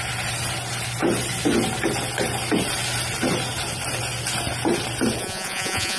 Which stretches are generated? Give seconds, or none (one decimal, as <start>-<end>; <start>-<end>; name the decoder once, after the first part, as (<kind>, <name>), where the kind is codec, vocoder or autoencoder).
5.2-6.0 (vocoder, Vocos)